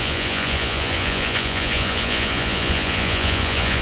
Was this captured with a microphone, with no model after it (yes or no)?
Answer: no